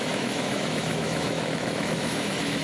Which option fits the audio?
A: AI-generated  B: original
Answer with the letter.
A